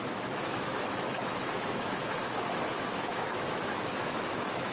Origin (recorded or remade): remade